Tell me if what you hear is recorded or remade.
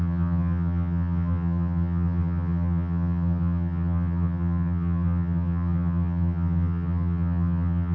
remade